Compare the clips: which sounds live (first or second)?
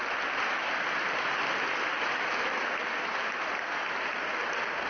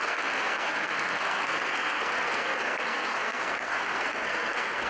first